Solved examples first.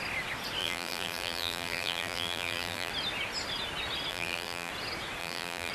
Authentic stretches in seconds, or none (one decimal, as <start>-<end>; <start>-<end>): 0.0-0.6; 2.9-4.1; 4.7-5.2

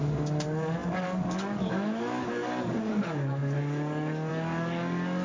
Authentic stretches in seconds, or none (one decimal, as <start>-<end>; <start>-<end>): none

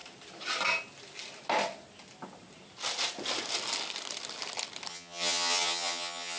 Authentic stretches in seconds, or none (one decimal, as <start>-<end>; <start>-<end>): 0.0-4.9

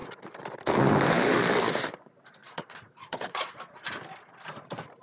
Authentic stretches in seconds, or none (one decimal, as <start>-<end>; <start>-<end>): 0.0-2.4; 3.5-5.0

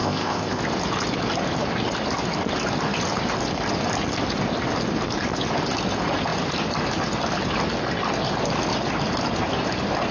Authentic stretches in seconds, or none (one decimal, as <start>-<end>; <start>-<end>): 0.6-10.1

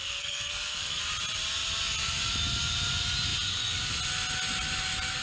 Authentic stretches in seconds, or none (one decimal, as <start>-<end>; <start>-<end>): 1.0-5.2